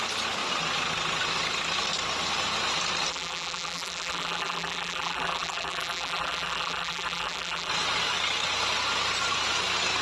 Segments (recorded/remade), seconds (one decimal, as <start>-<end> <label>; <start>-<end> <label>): 0.0-3.1 recorded; 3.1-7.7 remade; 7.7-10.0 recorded